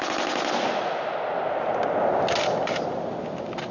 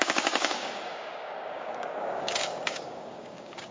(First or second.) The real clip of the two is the first